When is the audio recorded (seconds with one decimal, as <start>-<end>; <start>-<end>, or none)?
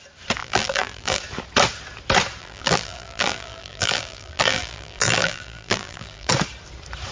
0.0-0.4; 1.2-2.4; 6.3-7.1